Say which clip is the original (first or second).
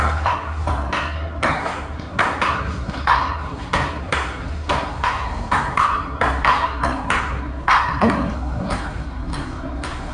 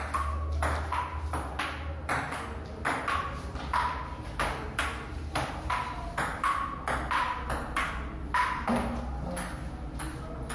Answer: second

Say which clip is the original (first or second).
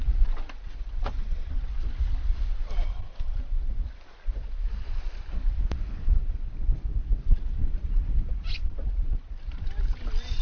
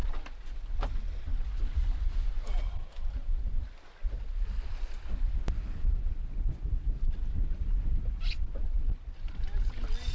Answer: second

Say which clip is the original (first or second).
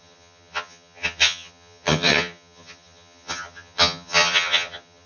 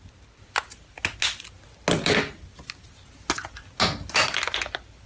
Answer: second